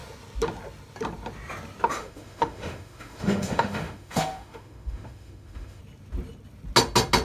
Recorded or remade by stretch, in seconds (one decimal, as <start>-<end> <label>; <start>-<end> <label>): 0.0-1.9 recorded; 1.9-5.8 remade; 5.8-7.2 recorded